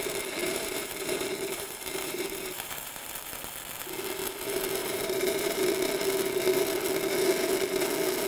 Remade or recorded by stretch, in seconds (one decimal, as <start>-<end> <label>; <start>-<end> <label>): 0.0-0.4 recorded; 0.4-3.1 remade; 3.1-4.8 recorded; 4.8-5.7 remade; 5.7-8.3 recorded